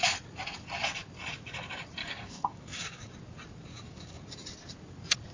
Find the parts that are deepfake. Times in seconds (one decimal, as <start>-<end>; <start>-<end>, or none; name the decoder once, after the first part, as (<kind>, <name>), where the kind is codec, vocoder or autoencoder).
2.0-3.1 (codec, DAC); 3.7-4.2

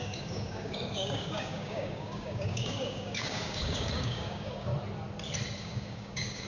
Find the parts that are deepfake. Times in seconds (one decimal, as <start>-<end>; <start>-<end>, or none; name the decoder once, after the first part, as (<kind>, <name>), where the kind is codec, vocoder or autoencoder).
0.0-4.7 (codec, DAC); 5.6-6.5

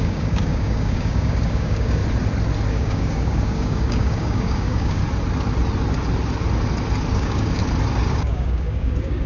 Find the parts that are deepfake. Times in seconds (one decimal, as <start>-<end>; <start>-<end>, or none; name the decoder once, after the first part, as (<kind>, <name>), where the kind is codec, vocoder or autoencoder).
0.0-2.0 (codec, DAC); 2.7-5.0; 7.1-7.6; 8.1-9.3

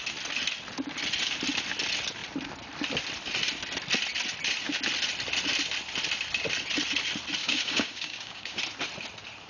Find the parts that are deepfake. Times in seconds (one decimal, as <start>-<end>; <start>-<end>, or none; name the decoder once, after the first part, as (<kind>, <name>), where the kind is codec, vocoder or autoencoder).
7.4-8.6 (codec, DAC)

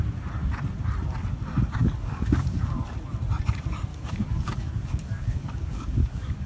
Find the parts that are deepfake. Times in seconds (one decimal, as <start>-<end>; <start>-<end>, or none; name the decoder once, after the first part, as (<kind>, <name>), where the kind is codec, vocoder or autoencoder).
1.8-2.9 (codec, DAC); 3.9-6.5

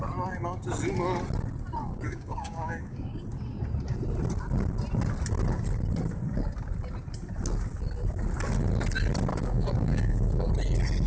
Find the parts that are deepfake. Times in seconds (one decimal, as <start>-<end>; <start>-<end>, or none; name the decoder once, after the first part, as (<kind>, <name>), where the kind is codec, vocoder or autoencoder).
1.8-3.2 (codec, DAC); 9.3-10.5